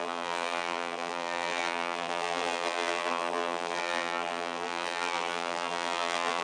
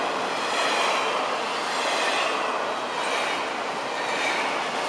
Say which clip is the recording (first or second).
second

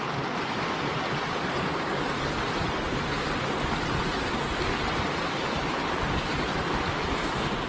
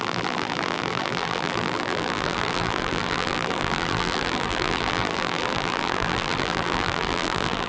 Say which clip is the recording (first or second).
first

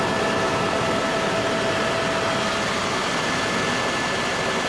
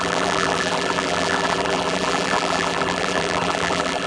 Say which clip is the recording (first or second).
first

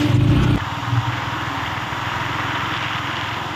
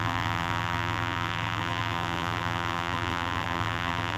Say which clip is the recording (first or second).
first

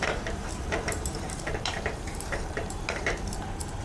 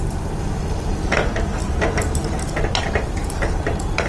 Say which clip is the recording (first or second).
second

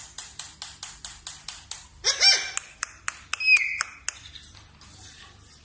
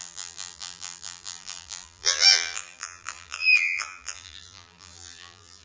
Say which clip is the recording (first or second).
first